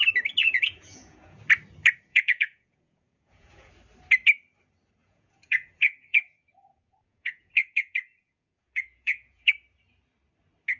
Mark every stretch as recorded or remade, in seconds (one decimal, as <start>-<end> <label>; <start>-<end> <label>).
0.0-0.4 recorded; 0.4-1.4 remade; 1.4-2.1 recorded; 2.1-3.7 remade; 3.7-5.0 recorded; 5.0-9.5 remade; 9.5-10.8 recorded